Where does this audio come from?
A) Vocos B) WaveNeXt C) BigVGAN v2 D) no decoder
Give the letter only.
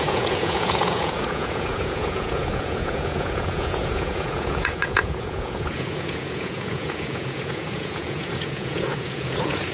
A